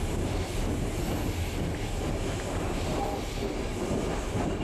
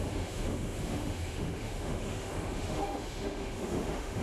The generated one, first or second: second